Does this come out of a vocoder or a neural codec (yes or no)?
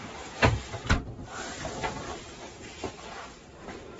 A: no